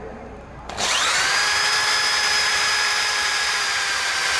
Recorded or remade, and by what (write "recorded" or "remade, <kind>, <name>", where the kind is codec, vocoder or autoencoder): remade, vocoder, BigVGAN v2